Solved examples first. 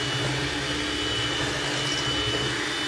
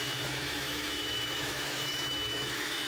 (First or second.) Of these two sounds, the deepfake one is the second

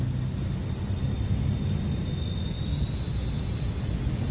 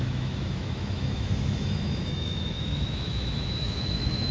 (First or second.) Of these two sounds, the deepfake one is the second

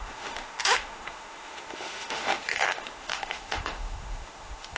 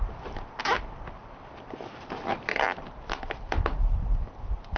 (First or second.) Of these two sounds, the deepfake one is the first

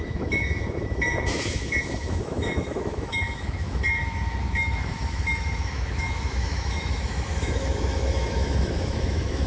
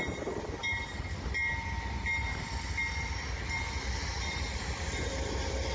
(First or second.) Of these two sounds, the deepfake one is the first